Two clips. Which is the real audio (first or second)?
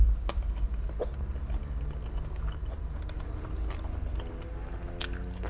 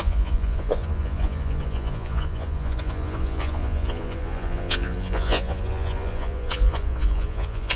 first